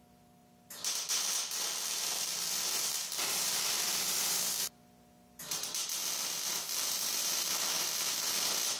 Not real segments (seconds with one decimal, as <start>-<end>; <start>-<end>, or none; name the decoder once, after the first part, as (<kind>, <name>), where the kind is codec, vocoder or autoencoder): 0.0-5.8 (vocoder, BigVGAN v2); 6.5-8.8